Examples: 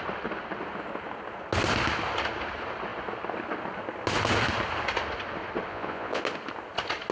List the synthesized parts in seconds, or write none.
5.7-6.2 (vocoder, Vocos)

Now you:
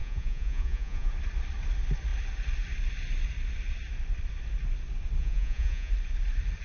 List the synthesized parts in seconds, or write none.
0.0-1.1 (vocoder, Vocos); 5.2-5.9

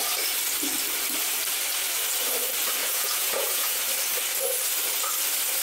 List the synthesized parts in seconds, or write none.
2.8-3.8 (vocoder, Vocos)

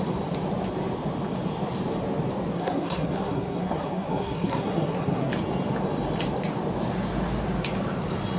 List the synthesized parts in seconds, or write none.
2.5-5.3 (codec, SNAC)

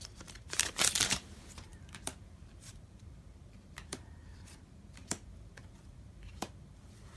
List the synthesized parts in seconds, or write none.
0.0-7.2 (vocoder, BigVGAN v2)

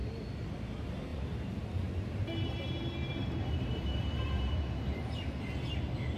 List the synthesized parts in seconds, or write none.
1.1-4.8 (vocoder, BigVGAN v2)

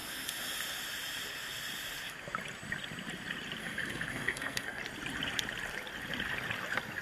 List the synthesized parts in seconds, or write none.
3.6-4.8 (codec, SNAC)